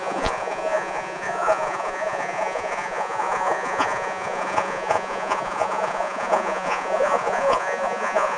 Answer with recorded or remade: remade